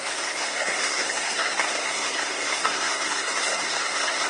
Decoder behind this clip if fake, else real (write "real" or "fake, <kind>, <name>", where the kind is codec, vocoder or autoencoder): fake, codec, SNAC